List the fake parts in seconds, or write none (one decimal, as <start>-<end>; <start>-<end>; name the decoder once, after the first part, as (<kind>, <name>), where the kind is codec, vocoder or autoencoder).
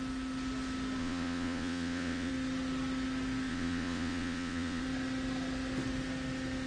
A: 1.0-2.3 (vocoder, Vocos); 3.5-4.8